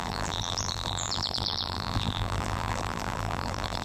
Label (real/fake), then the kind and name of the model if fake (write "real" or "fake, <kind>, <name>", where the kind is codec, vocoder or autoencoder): fake, vocoder, BigVGAN v2